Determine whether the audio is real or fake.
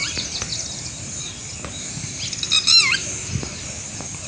real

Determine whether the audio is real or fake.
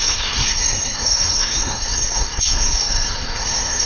fake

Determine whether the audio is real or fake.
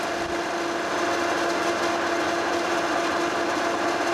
real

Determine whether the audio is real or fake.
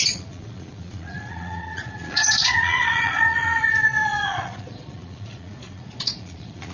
fake